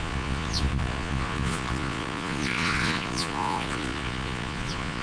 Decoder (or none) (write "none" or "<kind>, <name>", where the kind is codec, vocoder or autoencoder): vocoder, Vocos